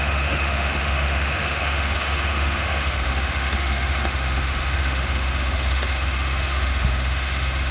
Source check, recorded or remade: remade